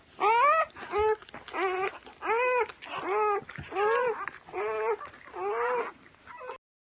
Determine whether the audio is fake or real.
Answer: real